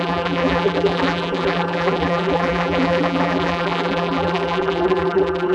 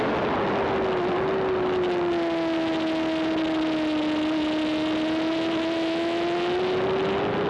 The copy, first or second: first